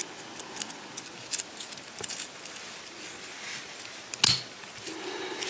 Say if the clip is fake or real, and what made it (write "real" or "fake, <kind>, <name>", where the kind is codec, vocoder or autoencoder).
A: real